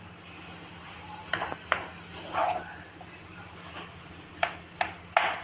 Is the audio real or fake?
real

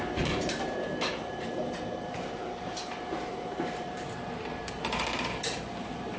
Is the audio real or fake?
fake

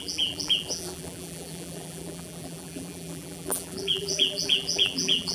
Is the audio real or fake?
fake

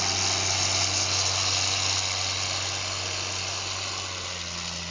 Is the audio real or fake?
real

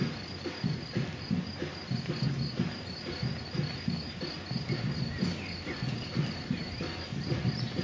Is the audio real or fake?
real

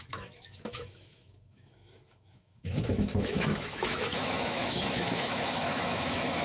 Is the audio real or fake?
fake